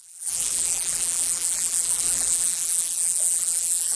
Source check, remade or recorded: remade